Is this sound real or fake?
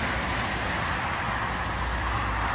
real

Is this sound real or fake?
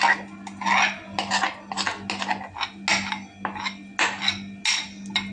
real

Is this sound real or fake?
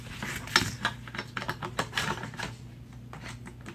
real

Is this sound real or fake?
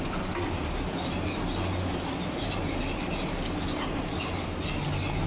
real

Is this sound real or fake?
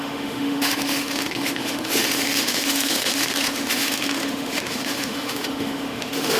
fake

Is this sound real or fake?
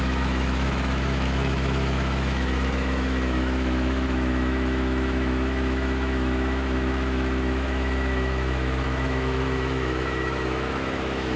fake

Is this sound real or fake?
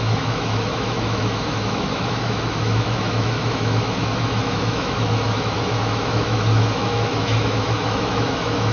fake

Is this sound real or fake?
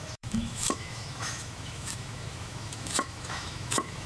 fake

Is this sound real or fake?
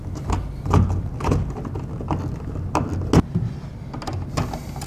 real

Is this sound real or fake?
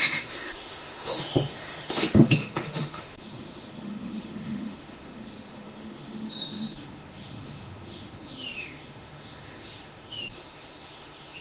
fake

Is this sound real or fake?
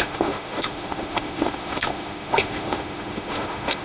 fake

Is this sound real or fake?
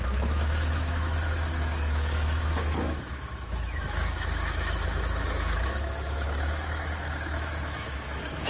fake